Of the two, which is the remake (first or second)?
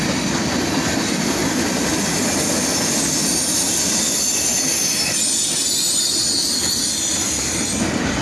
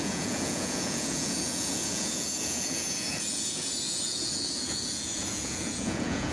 second